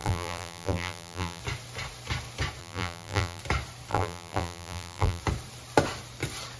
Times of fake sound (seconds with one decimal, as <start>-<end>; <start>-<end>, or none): 0.0-1.4; 2.6-3.4; 3.9-5.2